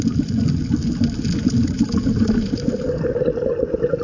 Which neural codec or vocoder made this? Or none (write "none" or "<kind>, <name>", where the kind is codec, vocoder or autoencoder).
none